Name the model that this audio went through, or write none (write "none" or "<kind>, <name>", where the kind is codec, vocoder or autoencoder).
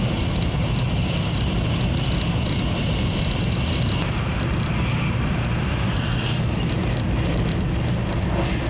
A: none